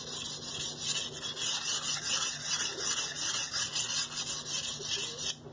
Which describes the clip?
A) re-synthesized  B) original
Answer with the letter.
B